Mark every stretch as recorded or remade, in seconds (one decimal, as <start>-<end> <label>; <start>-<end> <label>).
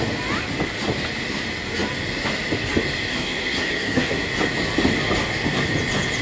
0.0-3.1 recorded; 3.1-4.3 remade; 4.3-6.2 recorded